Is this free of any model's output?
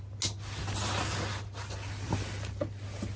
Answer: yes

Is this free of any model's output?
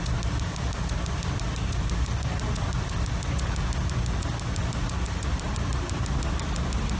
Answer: yes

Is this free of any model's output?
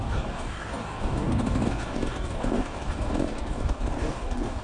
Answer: no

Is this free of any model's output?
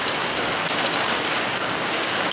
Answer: no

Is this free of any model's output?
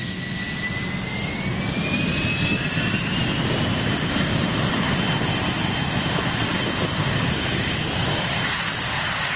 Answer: yes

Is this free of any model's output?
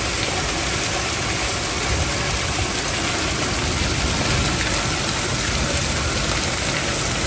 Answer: yes